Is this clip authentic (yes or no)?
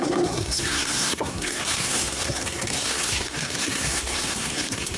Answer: no